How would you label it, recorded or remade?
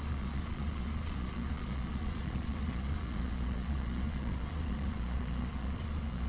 remade